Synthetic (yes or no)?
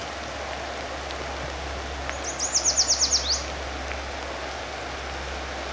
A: no